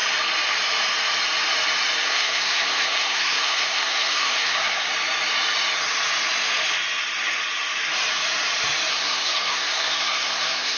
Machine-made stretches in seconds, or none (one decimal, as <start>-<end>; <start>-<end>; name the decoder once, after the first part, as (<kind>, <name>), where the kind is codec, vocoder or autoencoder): 2.0-4.9 (codec, SNAC); 8.9-10.8